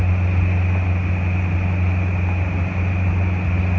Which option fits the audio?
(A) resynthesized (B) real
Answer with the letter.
B